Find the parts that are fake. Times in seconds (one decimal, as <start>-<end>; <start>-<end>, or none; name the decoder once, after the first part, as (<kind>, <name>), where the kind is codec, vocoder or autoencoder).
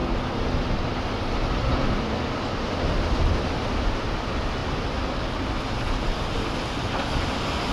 none